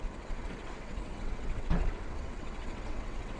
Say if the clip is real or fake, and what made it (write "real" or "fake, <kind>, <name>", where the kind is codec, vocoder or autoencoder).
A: fake, vocoder, WaveNeXt